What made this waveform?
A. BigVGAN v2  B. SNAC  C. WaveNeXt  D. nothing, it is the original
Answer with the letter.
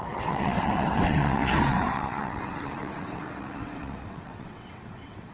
C